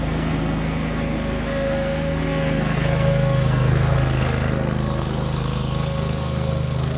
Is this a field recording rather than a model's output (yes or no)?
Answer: no